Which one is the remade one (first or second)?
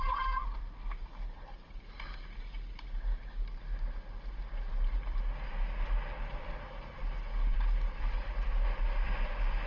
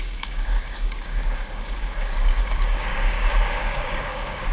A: second